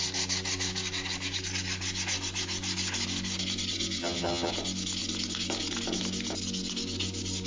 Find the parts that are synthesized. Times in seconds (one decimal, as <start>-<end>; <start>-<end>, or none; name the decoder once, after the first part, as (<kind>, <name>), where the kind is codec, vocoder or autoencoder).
4.0-4.5 (vocoder, HiFi-GAN)